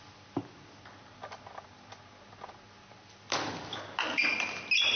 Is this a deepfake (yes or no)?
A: no